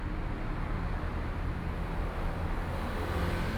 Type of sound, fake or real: real